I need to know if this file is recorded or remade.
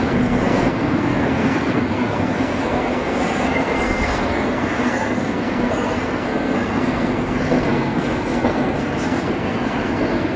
remade